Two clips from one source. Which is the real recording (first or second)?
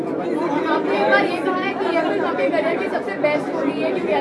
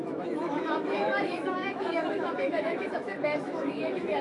first